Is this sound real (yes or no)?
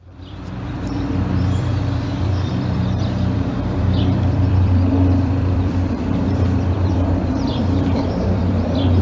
no